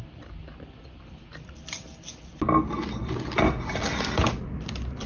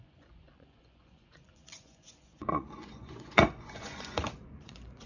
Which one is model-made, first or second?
second